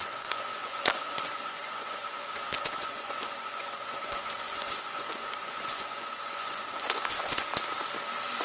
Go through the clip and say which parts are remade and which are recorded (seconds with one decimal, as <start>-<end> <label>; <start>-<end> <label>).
0.0-7.5 remade; 7.5-8.4 recorded